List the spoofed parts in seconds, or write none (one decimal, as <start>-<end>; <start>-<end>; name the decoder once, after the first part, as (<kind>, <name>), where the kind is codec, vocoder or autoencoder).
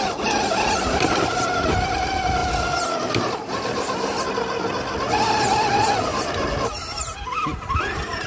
none